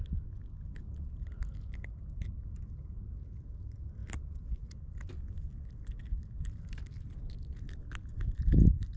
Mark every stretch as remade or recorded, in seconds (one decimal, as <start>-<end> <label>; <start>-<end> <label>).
0.0-4.0 recorded; 4.0-6.1 remade; 6.1-9.0 recorded